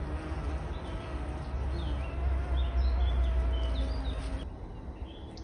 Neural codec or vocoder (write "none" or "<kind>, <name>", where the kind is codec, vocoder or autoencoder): none